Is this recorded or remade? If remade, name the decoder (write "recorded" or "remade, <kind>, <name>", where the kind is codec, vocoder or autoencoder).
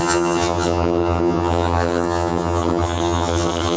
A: remade, vocoder, HiFi-GAN